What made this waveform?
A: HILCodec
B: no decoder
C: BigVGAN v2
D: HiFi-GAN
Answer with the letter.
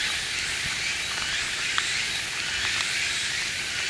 B